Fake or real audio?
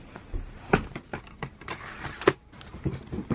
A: fake